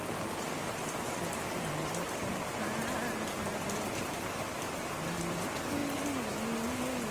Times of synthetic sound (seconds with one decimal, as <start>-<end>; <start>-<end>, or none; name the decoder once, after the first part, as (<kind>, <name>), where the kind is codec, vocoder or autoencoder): none